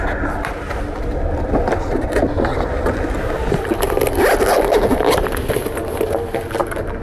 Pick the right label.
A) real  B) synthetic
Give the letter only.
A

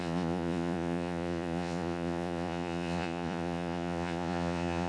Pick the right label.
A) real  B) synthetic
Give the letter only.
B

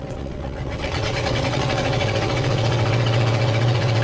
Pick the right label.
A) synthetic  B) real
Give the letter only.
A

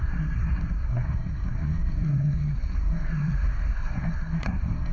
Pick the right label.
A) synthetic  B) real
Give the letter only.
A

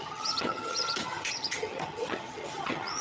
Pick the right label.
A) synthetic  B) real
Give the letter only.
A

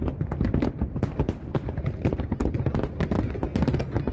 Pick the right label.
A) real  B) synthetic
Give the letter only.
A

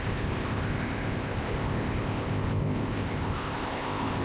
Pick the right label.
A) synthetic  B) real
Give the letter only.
A